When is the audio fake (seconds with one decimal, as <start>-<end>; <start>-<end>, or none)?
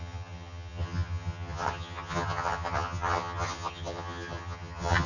0.0-5.1